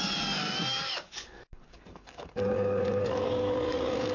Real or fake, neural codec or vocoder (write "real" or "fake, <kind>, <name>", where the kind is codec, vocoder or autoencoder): fake, codec, DAC